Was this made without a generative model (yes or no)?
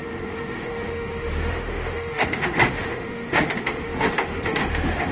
no